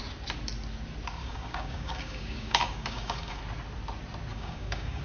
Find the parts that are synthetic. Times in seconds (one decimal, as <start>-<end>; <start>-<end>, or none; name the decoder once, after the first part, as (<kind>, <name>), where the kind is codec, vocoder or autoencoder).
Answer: 1.2-3.4 (codec, DAC); 4.3-5.0